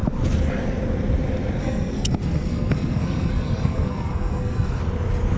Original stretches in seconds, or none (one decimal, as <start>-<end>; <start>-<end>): 0.0-1.6; 4.8-5.4